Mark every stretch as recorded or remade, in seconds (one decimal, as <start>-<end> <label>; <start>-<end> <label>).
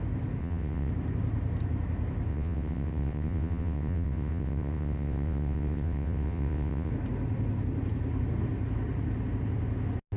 0.0-0.4 recorded; 0.4-0.9 remade; 0.9-2.3 recorded; 2.3-6.9 remade; 6.9-10.2 recorded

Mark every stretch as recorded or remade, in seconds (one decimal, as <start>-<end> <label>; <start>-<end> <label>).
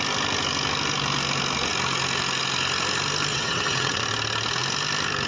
0.0-3.3 recorded; 3.3-4.0 remade; 4.0-5.3 recorded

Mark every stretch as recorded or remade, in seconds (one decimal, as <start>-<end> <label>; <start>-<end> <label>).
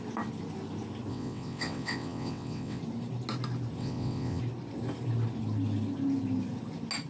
0.0-1.1 recorded; 1.1-2.8 remade; 2.8-3.8 recorded; 3.8-4.4 remade; 4.4-7.1 recorded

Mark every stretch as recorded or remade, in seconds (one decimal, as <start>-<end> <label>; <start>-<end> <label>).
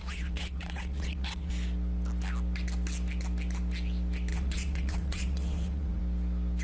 0.0-1.5 remade; 1.5-4.3 recorded; 4.3-6.0 remade; 6.0-6.6 recorded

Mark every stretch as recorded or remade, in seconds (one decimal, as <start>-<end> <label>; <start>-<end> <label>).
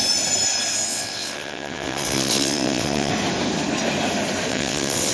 0.0-0.9 recorded; 0.9-3.1 remade; 3.1-4.5 recorded; 4.5-5.1 remade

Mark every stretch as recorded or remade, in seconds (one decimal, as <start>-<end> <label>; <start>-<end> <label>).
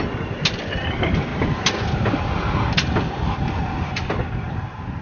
0.0-5.0 recorded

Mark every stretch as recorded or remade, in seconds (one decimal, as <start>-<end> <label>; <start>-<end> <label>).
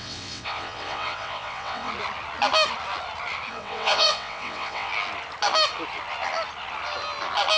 0.0-1.9 remade; 1.9-3.5 recorded; 3.5-4.9 remade; 4.9-7.6 recorded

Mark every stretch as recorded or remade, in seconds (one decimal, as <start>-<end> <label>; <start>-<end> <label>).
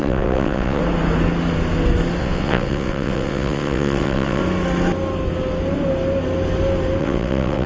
0.0-0.8 remade; 0.8-2.2 recorded; 2.2-4.4 remade; 4.4-7.0 recorded; 7.0-7.7 remade